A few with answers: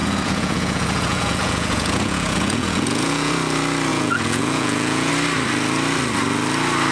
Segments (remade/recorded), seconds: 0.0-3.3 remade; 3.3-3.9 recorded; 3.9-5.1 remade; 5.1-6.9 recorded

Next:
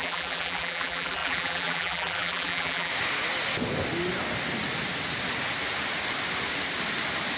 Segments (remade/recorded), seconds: 0.0-2.9 remade; 2.9-7.4 recorded

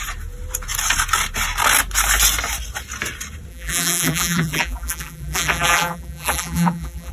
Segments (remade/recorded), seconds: 0.0-3.5 recorded; 3.5-7.1 remade

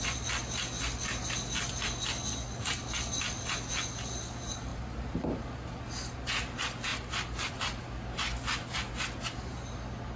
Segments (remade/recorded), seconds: 0.0-4.7 recorded; 4.7-5.3 remade; 5.3-10.2 recorded